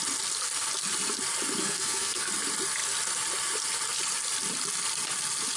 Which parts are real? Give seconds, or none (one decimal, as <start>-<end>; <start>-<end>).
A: 0.0-1.6; 2.3-5.6